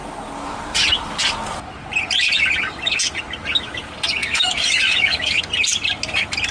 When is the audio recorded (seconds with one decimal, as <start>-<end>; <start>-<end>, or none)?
0.0-4.2; 5.4-6.5